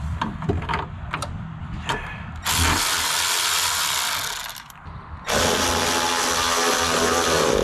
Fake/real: real